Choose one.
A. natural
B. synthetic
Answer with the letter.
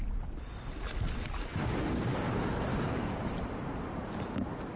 A